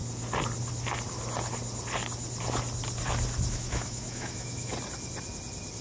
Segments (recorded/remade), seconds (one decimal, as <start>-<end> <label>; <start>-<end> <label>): 0.0-3.5 recorded; 3.5-4.7 remade; 4.7-5.8 recorded